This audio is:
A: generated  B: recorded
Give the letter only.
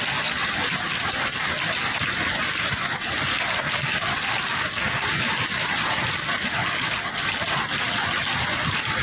B